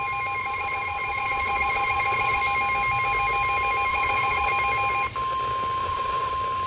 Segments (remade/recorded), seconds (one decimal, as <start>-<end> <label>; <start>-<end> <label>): 0.0-0.4 recorded; 0.4-2.4 remade; 2.4-3.9 recorded; 3.9-4.5 remade; 4.5-5.8 recorded; 5.8-6.3 remade; 6.3-6.7 recorded

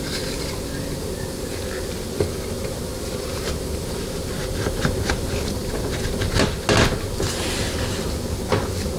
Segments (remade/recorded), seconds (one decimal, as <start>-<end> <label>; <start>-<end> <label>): 0.0-9.0 recorded

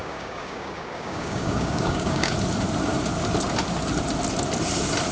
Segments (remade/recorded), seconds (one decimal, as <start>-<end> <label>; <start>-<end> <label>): 0.0-2.3 remade; 2.3-5.1 recorded

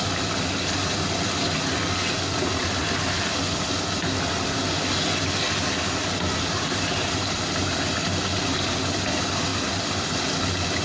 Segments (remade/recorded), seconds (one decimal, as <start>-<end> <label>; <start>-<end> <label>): 0.0-10.8 recorded